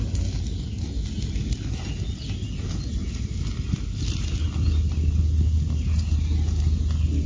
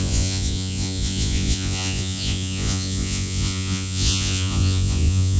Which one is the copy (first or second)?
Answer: second